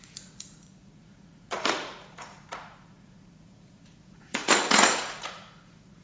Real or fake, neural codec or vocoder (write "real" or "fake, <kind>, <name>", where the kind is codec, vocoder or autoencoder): fake, vocoder, Vocos